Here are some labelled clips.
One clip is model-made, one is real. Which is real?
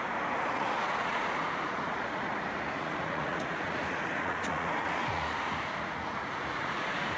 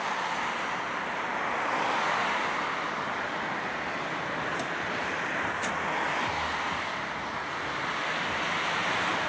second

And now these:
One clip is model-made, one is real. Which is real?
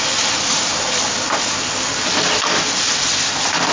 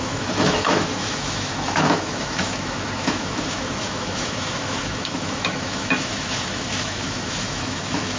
first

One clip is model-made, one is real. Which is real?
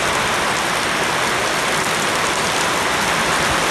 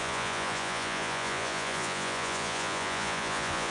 first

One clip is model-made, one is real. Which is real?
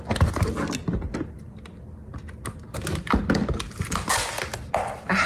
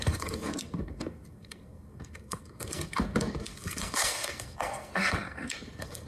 first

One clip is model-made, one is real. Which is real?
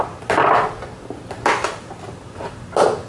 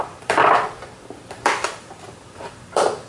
first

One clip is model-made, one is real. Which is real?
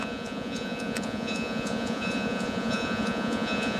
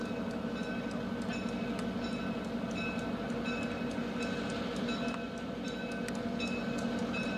second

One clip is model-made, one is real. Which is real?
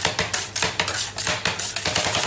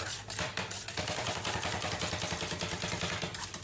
first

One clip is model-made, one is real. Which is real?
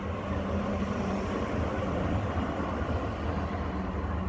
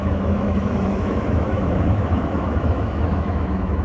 first